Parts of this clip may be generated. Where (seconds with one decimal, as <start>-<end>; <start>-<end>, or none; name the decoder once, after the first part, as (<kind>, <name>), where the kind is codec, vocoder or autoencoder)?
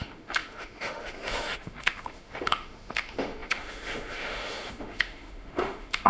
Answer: 0.0-6.1 (autoencoder, DAC-VAE)